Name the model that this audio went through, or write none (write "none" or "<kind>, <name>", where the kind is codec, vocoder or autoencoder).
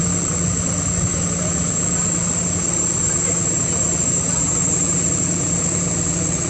none